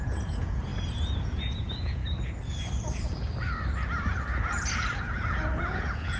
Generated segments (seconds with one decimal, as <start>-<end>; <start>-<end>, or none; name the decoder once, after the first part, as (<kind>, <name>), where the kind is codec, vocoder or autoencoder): 0.0-0.7 (vocoder, Vocos); 1.2-2.0; 5.0-6.2